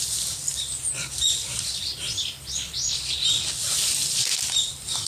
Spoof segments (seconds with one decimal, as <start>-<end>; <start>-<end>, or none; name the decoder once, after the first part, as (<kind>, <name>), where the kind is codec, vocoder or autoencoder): none